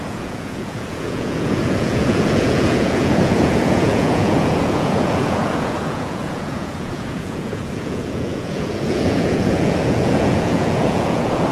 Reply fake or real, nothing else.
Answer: fake